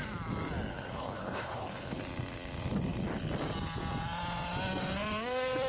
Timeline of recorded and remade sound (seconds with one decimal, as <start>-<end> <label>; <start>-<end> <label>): 0.0-0.7 recorded; 0.7-2.0 remade; 2.0-5.7 recorded